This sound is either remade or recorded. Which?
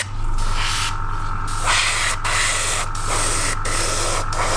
recorded